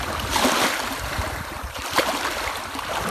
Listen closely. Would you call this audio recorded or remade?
recorded